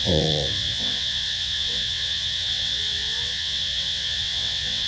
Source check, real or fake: fake